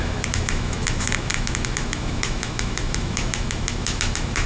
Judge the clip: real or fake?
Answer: fake